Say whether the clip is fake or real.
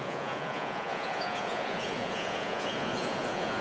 fake